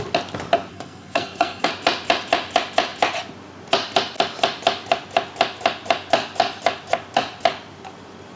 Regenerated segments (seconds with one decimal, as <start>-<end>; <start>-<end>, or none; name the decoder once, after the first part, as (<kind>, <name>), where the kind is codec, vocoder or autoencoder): 0.7-1.7 (codec, SNAC)